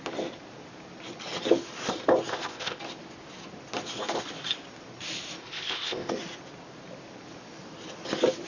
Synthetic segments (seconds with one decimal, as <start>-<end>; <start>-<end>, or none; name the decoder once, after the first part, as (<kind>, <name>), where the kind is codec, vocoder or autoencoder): 2.3-2.8 (codec, ZipCodec); 5.4-6.1